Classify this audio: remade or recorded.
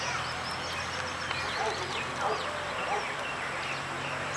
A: recorded